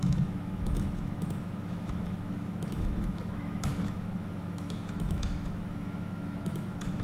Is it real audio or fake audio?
fake